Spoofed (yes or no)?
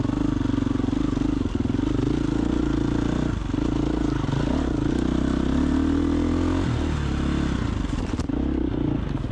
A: no